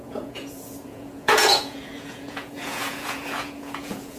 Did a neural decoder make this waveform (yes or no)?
yes